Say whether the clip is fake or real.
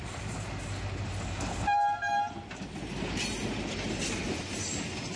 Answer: real